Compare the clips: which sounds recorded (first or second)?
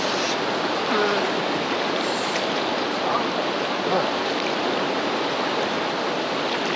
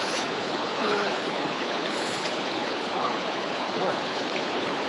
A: first